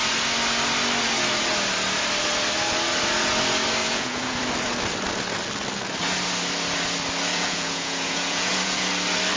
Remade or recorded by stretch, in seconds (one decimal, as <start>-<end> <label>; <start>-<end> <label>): 0.0-3.8 recorded; 3.8-4.4 remade; 4.4-7.3 recorded; 7.3-8.9 remade; 8.9-9.4 recorded